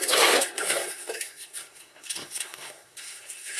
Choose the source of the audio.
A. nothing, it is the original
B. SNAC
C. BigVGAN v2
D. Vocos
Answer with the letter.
B